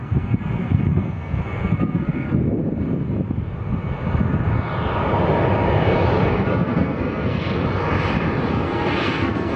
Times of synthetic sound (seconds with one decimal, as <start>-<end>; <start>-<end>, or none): 0.0-2.4; 6.3-7.6; 8.5-9.6